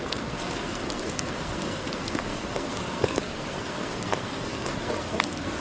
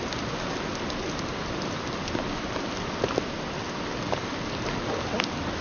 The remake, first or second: first